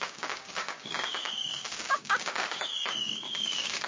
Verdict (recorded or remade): remade